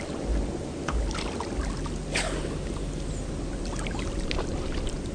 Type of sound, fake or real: real